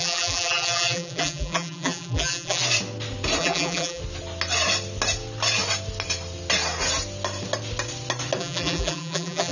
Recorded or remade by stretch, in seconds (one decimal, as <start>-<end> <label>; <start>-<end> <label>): 0.0-2.6 remade; 2.6-3.4 recorded; 3.4-4.0 remade; 4.0-8.4 recorded; 8.4-9.5 remade